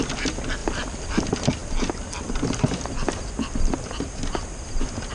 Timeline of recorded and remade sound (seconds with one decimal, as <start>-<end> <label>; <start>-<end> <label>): 0.0-5.1 recorded